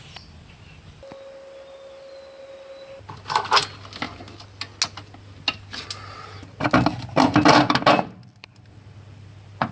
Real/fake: real